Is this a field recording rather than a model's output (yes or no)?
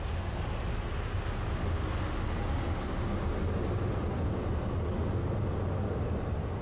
yes